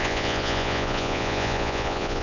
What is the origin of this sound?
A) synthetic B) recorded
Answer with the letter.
A